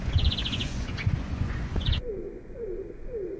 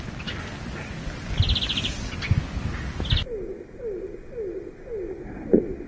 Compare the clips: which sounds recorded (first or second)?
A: second